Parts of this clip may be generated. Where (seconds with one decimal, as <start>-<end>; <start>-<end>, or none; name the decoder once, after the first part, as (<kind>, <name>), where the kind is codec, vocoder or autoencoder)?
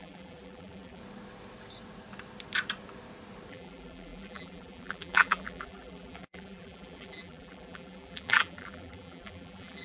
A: 0.0-1.0 (vocoder, BigVGAN v2); 3.5-9.8